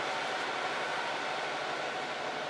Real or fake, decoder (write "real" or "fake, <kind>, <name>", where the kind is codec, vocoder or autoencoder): real